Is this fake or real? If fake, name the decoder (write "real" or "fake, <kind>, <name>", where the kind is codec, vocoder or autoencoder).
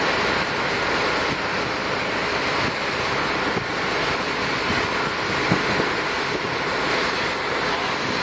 real